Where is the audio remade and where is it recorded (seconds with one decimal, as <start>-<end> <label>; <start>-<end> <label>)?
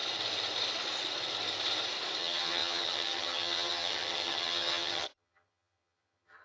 0.0-2.2 recorded; 2.2-6.4 remade